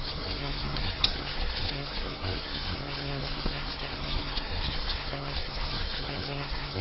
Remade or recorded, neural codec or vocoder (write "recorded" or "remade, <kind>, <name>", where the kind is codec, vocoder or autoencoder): remade, codec, SNAC